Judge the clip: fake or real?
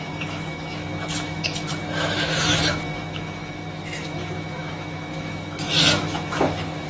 fake